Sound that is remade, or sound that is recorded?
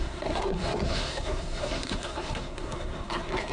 remade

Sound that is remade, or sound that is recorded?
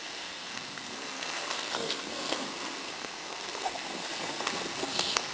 remade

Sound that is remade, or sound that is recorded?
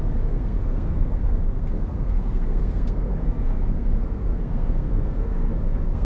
remade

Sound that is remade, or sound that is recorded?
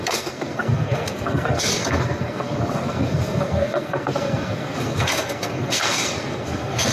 remade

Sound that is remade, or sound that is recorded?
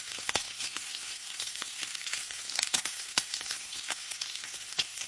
remade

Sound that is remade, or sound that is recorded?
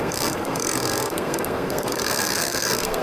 remade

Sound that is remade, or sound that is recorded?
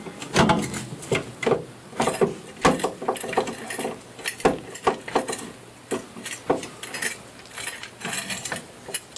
recorded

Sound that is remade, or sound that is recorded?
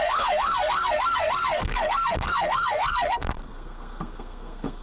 remade